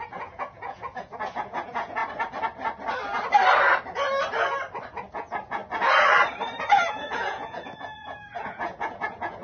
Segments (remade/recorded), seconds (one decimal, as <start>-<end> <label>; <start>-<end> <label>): 0.0-2.0 remade; 2.0-5.1 recorded; 5.1-5.6 remade; 5.6-6.6 recorded; 6.6-9.4 remade